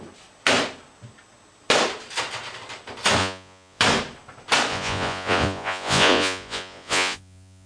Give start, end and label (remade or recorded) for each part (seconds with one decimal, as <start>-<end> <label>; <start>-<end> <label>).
0.0-3.2 recorded; 3.2-3.8 remade; 3.8-4.7 recorded; 4.7-7.7 remade